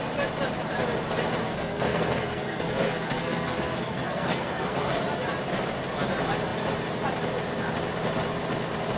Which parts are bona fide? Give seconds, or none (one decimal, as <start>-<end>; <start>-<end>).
0.0-1.4; 5.0-9.0